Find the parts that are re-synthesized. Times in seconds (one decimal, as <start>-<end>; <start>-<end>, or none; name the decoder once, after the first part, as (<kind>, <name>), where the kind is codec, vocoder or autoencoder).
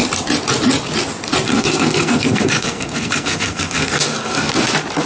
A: 1.5-4.6 (codec, SNAC)